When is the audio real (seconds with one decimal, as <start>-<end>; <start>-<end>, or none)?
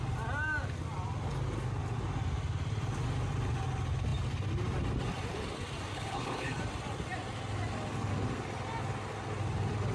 0.0-5.9; 6.6-9.9